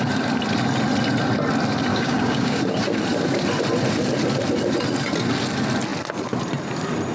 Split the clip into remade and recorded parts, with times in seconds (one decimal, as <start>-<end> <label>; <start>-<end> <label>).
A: 0.0-1.9 recorded; 1.9-2.6 remade; 2.6-7.1 recorded